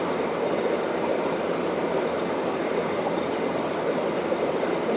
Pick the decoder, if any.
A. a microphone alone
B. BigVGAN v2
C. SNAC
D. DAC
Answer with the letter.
A